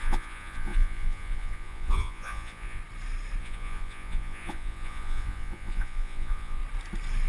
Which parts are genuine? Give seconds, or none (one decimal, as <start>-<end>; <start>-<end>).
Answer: 2.8-3.4; 6.6-7.3